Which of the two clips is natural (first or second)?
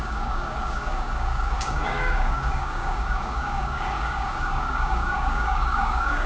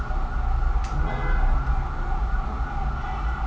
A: second